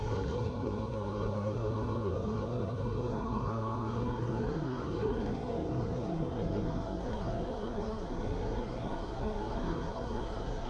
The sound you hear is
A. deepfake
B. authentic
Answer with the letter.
A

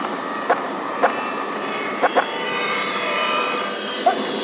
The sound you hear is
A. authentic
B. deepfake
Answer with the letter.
B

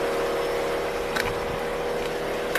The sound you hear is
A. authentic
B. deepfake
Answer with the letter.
A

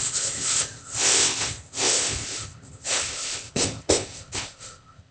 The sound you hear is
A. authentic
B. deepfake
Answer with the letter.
B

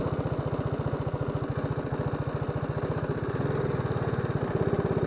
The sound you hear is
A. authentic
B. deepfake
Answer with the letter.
A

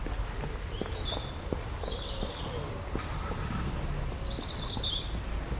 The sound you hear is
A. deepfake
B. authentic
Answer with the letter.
B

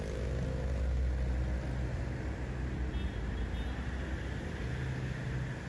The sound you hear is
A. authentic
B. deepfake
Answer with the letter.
A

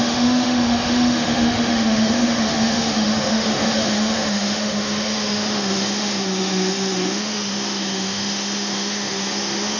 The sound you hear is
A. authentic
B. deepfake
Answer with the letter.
B